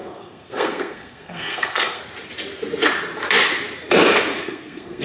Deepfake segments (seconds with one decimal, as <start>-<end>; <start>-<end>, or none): 0.0-2.0; 4.3-5.0